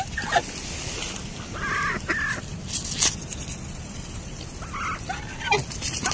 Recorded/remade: recorded